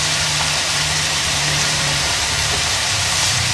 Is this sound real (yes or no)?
no